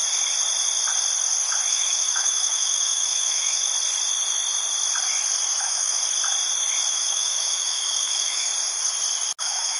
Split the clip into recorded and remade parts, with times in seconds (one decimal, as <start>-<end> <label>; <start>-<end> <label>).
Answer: 0.0-1.7 recorded; 1.7-3.7 remade; 3.7-5.6 recorded; 5.6-6.0 remade; 6.0-6.9 recorded; 6.9-8.5 remade; 8.5-9.4 recorded; 9.4-9.8 remade